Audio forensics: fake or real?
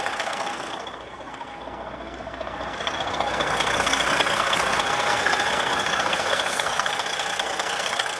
fake